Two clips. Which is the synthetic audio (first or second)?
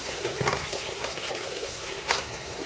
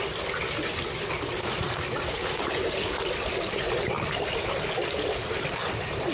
first